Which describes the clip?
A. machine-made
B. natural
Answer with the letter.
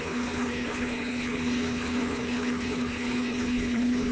A